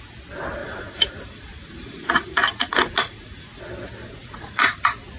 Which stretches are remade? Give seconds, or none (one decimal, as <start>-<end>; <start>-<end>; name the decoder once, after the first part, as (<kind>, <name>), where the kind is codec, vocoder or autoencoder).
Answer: 0.6-3.6 (vocoder, Vocos); 4.2-4.8